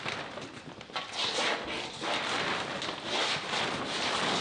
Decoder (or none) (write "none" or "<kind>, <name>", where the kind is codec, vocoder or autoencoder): none